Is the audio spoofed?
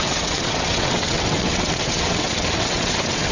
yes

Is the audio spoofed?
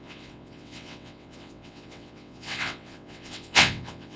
yes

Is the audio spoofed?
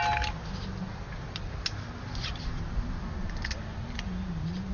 no